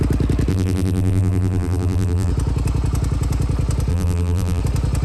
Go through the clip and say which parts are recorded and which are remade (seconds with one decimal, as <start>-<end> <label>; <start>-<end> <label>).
0.0-0.5 recorded; 0.5-2.3 remade; 2.3-3.9 recorded; 3.9-4.6 remade; 4.6-5.0 recorded